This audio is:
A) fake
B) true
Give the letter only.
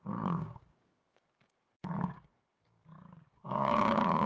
A